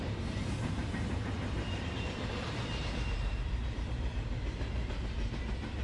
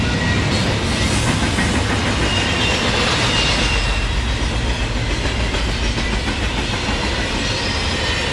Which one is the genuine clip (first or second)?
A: second